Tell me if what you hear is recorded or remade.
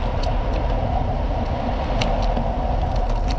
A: recorded